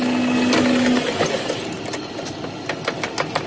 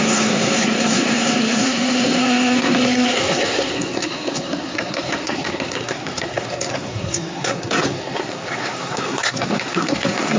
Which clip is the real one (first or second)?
first